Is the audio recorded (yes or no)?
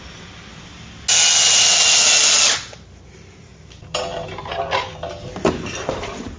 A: yes